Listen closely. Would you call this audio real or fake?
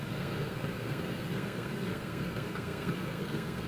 fake